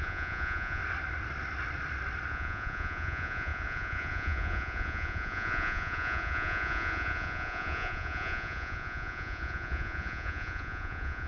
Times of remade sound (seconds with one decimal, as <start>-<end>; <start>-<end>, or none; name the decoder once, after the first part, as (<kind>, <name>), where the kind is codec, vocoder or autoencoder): 0.0-0.8 (vocoder, Vocos); 2.3-11.3